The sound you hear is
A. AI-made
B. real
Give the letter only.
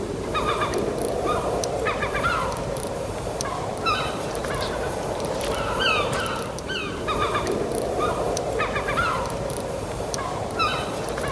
A